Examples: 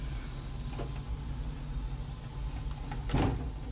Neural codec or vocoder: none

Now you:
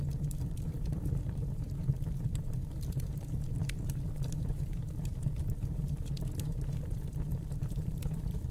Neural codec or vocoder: vocoder, BigVGAN v2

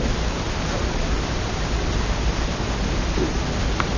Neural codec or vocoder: none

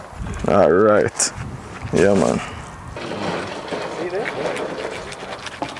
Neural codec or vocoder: none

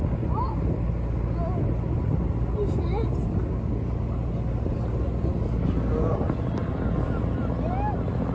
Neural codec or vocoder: none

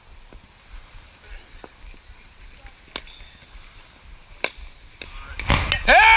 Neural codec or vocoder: none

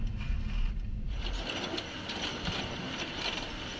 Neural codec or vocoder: none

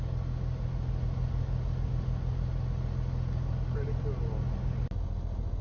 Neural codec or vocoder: none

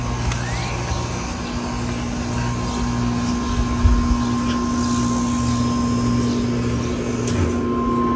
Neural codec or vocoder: none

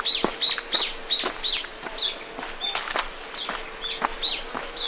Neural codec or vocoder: none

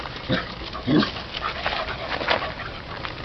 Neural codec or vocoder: none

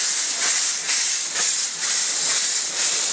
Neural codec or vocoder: none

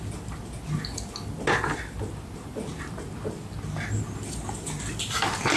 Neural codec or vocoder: none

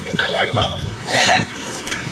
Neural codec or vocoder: codec, SNAC